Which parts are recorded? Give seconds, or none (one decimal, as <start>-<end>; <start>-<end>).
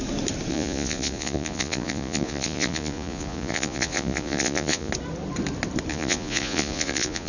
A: 0.0-0.5; 4.9-5.9